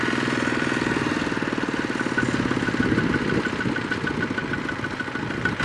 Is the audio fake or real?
real